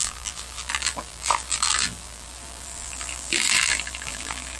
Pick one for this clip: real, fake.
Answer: fake